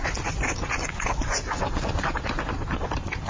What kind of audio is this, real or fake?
real